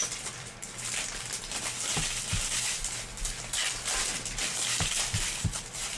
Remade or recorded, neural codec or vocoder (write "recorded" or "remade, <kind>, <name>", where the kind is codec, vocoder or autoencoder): remade, vocoder, BigVGAN v2